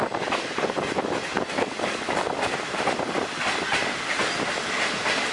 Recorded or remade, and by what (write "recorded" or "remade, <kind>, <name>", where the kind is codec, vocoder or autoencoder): recorded